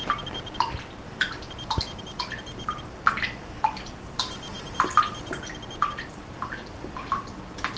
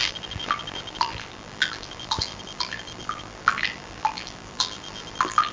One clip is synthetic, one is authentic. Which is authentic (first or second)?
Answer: first